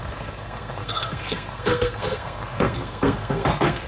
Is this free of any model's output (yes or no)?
no